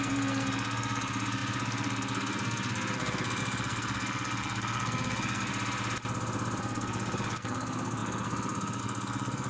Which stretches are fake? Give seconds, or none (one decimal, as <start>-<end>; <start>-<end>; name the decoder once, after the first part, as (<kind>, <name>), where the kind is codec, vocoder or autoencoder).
0.0-5.5 (codec, SNAC); 6.6-9.5